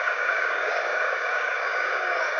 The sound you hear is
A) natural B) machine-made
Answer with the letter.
B